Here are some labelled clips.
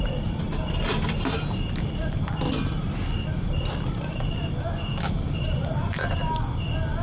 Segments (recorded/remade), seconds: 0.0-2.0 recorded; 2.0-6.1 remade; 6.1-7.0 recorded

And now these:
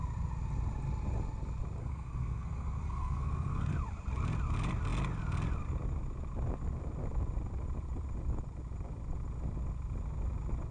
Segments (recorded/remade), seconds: 0.0-1.8 recorded; 1.8-3.7 remade; 3.7-10.7 recorded

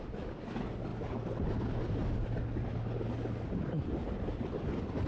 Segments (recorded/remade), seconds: 0.0-5.1 recorded

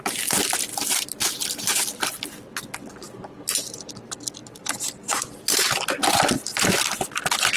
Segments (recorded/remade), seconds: 0.0-4.4 recorded; 4.4-5.7 remade; 5.7-7.6 recorded

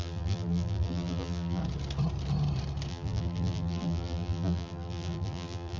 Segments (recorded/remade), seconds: 0.0-1.6 remade; 1.6-2.9 recorded; 2.9-5.8 remade

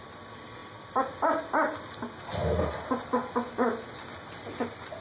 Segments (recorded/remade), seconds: 0.0-0.6 recorded; 0.6-1.9 remade; 1.9-5.0 recorded

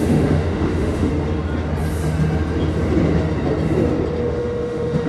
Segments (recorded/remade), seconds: 0.0-1.1 remade; 1.1-4.2 recorded; 4.2-5.1 remade